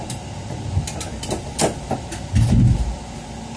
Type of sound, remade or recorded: recorded